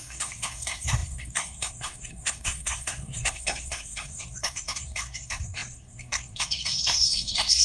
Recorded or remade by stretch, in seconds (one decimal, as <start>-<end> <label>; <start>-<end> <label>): 0.0-7.6 remade